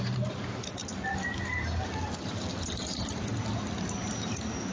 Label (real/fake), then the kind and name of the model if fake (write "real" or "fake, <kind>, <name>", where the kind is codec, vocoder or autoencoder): fake, vocoder, BigVGAN v2